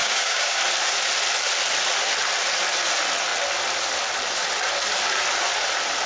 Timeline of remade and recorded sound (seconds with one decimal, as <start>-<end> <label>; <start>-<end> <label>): 0.0-0.6 remade; 0.6-6.1 recorded